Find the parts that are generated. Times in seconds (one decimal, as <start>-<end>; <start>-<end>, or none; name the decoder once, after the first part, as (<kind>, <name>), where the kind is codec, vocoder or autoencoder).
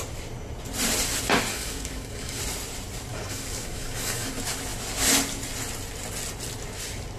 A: 1.5-2.4 (codec, DAC); 3.1-4.3